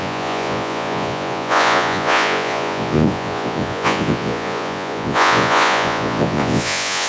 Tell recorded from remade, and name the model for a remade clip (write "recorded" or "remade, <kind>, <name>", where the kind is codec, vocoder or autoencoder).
remade, vocoder, Vocos